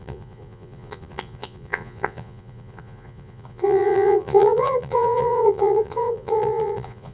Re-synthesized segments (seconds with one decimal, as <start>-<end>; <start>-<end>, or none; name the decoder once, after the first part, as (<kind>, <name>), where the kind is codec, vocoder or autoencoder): 0.0-7.1 (vocoder, Vocos)